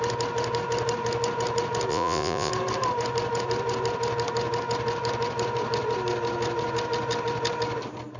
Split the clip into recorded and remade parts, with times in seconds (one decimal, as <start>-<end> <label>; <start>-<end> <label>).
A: 0.0-1.9 recorded; 1.9-2.5 remade; 2.5-8.2 recorded